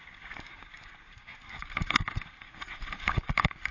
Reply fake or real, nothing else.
fake